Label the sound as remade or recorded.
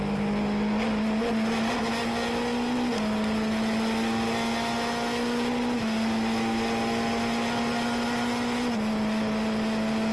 recorded